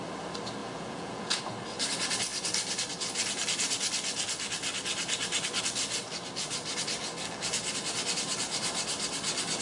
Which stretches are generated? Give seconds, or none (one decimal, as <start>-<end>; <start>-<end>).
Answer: 0.6-1.4